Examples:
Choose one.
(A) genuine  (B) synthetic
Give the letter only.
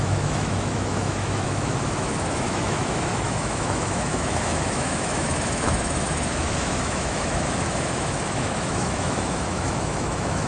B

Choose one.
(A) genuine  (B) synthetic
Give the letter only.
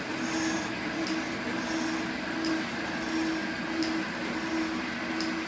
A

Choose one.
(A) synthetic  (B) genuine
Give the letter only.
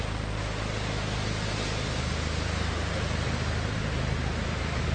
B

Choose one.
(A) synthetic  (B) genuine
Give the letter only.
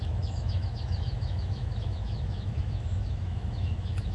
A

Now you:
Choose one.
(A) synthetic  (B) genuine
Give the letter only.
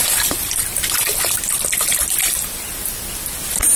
B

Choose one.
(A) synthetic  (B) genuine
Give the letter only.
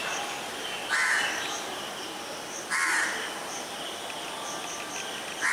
B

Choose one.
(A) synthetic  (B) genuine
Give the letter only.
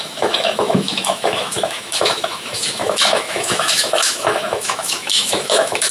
A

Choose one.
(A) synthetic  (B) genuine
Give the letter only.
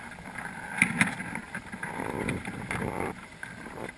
B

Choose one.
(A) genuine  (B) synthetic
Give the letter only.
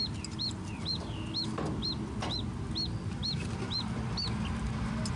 A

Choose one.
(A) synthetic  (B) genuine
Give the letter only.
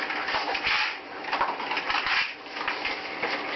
B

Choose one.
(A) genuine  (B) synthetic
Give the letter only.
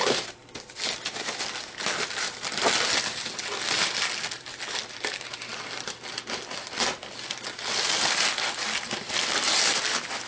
A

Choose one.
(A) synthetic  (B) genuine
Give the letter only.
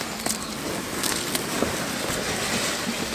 B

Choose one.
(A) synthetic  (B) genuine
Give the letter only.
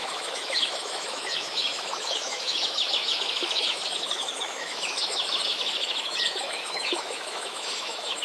A